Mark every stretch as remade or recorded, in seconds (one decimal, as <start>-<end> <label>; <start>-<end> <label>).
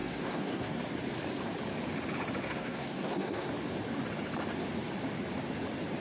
0.0-0.8 remade; 0.8-2.4 recorded; 2.4-3.5 remade; 3.5-6.0 recorded